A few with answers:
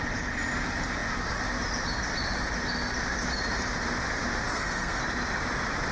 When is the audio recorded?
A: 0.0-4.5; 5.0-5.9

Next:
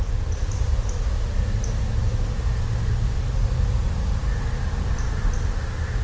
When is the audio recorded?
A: 0.0-6.0

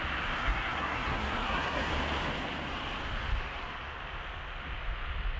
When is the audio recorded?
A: 0.0-0.4; 1.9-5.4